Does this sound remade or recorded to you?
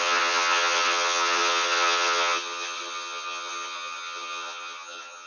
remade